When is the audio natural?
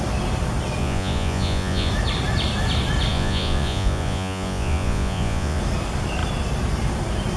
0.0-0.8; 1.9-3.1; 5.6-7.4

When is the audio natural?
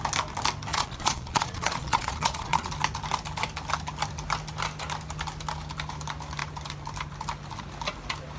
0.0-0.7; 2.7-8.4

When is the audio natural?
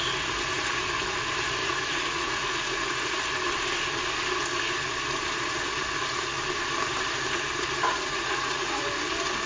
0.0-1.6; 3.2-7.9; 8.9-9.5